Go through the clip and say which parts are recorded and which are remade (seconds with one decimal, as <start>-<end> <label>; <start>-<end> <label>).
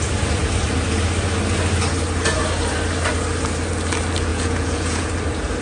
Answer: 0.0-4.3 recorded; 4.3-5.1 remade; 5.1-5.6 recorded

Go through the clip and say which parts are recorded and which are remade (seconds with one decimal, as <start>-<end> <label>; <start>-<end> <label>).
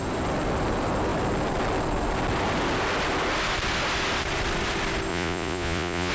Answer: 0.0-5.1 recorded; 5.1-6.1 remade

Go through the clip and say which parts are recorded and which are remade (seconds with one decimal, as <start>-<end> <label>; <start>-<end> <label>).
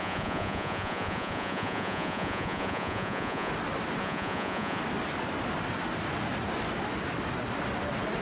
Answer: 0.0-3.5 remade; 3.5-4.0 recorded; 4.0-4.8 remade; 4.8-8.2 recorded